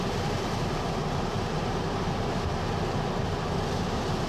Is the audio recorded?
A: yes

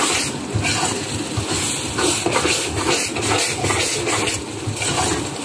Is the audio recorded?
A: yes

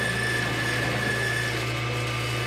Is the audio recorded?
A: yes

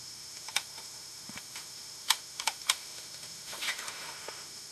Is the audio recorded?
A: no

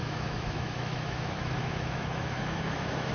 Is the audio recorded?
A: no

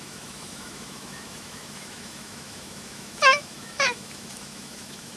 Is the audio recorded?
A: no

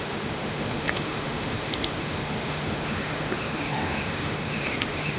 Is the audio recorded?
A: no